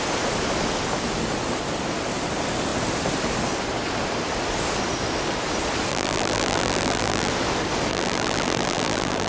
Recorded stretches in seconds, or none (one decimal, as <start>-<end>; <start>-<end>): 0.0-5.9; 7.3-7.9